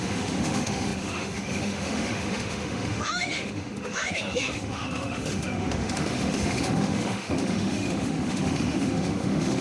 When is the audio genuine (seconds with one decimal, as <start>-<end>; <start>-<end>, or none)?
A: none